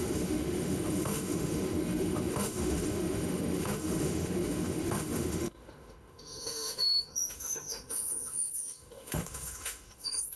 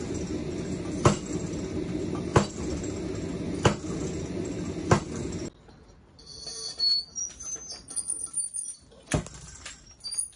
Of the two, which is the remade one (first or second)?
first